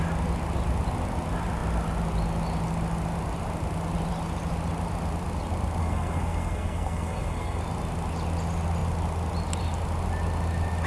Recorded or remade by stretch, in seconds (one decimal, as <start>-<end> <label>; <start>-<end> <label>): 0.0-5.8 recorded; 5.8-7.6 remade; 7.6-10.9 recorded

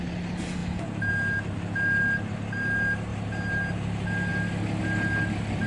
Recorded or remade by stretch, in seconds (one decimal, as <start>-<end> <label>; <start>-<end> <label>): 0.0-5.7 recorded

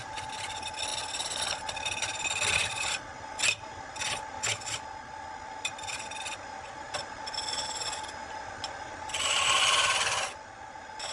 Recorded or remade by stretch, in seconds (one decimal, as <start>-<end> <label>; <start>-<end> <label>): 0.0-11.1 recorded